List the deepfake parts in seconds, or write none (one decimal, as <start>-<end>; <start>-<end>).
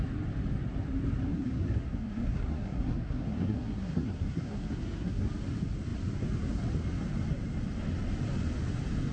1.3-5.3